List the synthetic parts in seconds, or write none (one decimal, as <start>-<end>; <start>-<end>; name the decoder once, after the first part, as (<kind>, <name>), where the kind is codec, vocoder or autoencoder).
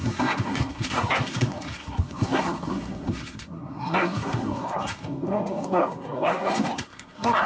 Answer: 0.0-7.5 (codec, SNAC)